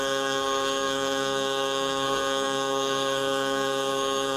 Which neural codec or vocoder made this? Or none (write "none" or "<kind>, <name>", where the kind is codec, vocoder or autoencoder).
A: codec, SNAC